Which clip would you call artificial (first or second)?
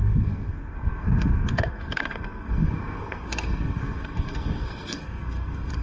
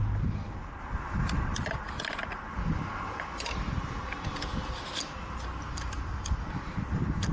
first